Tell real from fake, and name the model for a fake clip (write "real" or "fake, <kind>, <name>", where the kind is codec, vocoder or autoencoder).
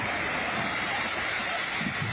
real